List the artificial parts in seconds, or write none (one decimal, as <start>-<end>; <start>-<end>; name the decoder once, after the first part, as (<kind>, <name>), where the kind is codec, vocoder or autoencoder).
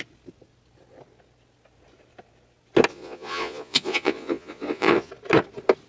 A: 2.9-5.1 (vocoder, Vocos)